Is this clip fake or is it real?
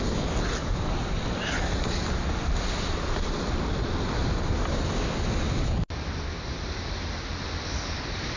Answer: real